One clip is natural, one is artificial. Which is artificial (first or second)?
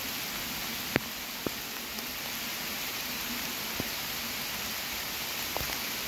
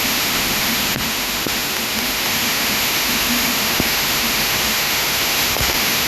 second